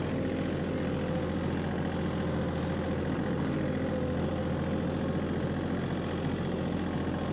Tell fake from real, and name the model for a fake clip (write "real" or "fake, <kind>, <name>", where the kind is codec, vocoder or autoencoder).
real